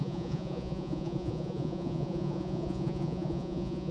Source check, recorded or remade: remade